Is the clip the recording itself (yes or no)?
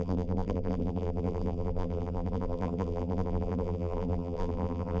no